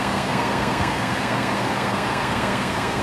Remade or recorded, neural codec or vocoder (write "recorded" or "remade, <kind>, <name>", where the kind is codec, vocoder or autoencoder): remade, codec, SNAC